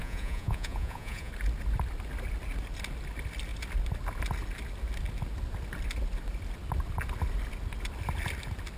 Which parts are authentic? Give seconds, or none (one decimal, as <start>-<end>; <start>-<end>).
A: 1.3-8.8